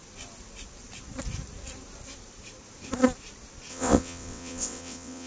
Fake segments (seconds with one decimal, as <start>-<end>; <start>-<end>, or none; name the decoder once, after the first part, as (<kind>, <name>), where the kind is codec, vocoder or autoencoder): 3.7-5.3 (vocoder, WaveNeXt)